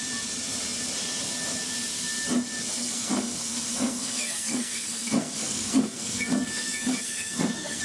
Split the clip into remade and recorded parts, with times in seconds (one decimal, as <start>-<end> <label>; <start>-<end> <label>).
0.0-2.8 recorded; 2.8-7.8 remade

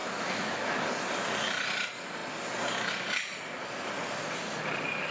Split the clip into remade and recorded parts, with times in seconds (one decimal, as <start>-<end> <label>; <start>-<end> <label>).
0.0-0.8 remade; 0.8-5.1 recorded

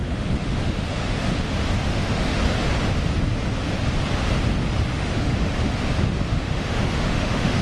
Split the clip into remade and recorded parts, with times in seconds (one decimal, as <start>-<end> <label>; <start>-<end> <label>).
0.0-1.2 remade; 1.2-1.8 recorded; 1.8-2.4 remade; 2.4-4.9 recorded; 4.9-5.5 remade; 5.5-6.3 recorded; 6.3-7.6 remade

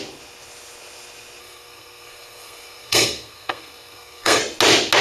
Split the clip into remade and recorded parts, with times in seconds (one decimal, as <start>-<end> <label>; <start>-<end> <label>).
0.0-1.4 recorded; 1.4-4.4 remade; 4.4-5.0 recorded

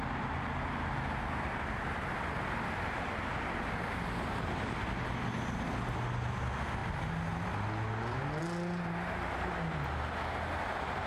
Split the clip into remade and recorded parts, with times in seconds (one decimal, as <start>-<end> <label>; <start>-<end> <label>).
0.0-11.1 recorded

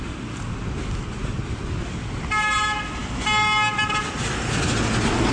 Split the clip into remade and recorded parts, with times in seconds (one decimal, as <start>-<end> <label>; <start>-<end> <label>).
0.0-5.3 recorded

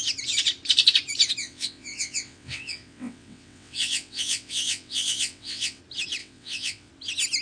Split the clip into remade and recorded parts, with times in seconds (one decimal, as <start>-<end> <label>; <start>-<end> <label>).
0.0-1.4 recorded; 1.4-5.8 remade; 5.8-6.2 recorded; 6.2-6.9 remade; 6.9-7.4 recorded